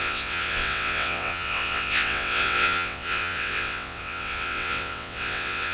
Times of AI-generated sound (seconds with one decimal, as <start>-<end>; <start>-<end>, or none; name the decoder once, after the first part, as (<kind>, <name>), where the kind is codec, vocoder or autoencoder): 0.0-5.7 (vocoder, WaveNeXt)